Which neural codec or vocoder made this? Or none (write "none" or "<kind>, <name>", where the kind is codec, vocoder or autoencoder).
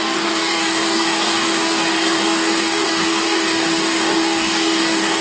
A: codec, DAC